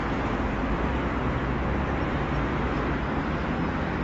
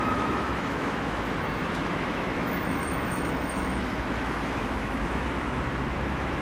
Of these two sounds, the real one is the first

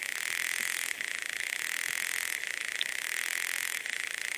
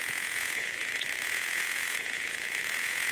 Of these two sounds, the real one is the first